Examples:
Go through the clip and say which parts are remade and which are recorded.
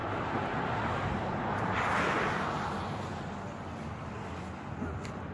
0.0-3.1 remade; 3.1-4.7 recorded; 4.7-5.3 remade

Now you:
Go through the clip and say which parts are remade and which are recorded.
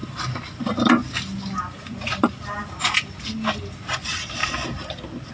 0.0-5.3 recorded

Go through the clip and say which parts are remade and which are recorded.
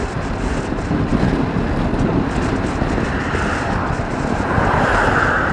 0.0-5.5 recorded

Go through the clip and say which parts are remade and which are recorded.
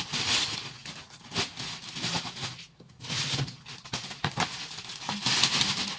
0.0-6.0 recorded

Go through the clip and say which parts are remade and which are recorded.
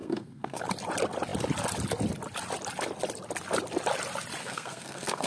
0.0-0.6 remade; 0.6-4.4 recorded; 4.4-5.3 remade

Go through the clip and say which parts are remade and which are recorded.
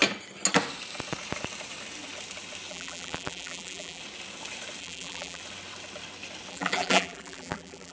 0.0-2.7 recorded; 2.7-4.0 remade; 4.0-4.8 recorded; 4.8-5.4 remade; 5.4-6.5 recorded; 6.5-7.9 remade